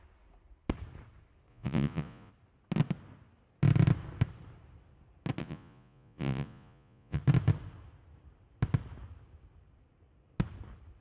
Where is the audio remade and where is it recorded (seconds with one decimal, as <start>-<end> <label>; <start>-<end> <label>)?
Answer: 0.0-1.5 recorded; 1.5-2.3 remade; 2.3-5.4 recorded; 5.4-7.2 remade; 7.2-11.0 recorded